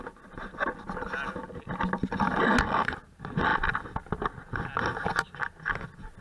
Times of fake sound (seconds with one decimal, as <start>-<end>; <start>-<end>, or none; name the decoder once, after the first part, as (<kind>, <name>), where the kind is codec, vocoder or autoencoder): none